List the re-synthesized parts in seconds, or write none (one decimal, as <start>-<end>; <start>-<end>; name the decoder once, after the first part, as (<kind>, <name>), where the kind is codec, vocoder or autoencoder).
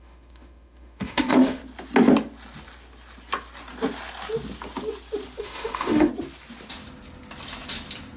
0.0-1.6 (autoencoder, DAC-VAE); 5.4-6.1